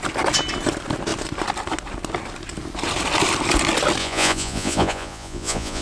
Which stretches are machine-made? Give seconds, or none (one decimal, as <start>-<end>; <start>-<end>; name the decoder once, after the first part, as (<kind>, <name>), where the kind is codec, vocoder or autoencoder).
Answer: 4.0-5.8 (vocoder, Vocos)